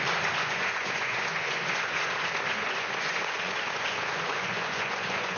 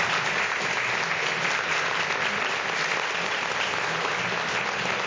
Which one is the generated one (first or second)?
first